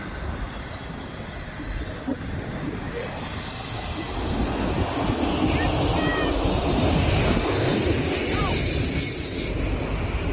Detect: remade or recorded recorded